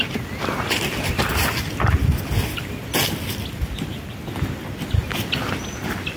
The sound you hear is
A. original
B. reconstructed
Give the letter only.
A